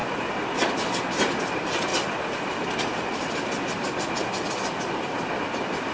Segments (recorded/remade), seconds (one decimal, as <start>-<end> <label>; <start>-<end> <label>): 0.0-5.9 recorded